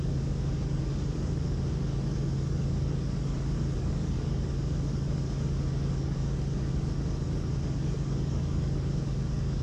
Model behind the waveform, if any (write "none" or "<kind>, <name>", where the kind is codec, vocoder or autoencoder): codec, DAC